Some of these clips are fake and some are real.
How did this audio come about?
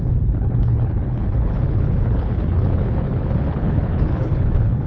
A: fake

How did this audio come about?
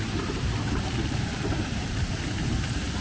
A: fake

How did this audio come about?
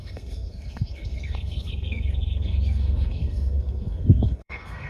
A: fake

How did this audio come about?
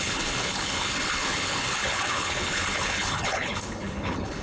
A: fake